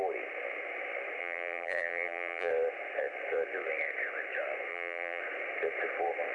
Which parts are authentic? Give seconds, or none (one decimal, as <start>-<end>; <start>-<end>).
0.0-1.2; 2.5-4.7; 5.2-6.3